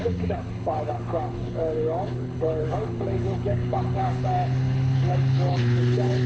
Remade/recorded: remade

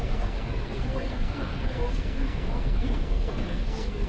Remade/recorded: remade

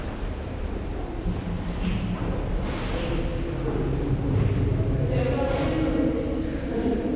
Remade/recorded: recorded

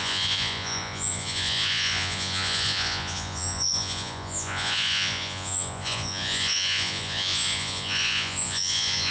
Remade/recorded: remade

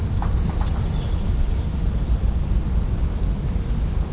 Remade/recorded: recorded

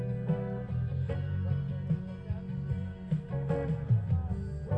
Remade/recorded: recorded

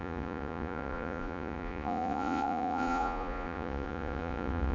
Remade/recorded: remade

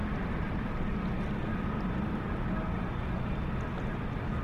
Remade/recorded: recorded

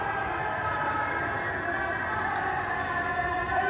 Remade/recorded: recorded